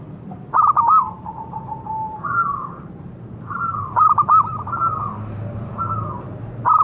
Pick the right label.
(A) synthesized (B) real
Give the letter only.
A